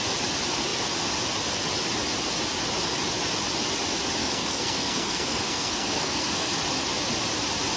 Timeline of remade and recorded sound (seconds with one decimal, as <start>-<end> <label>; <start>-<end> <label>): 0.0-4.2 recorded; 4.2-6.6 remade; 6.6-7.8 recorded